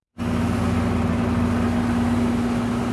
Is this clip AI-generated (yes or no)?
no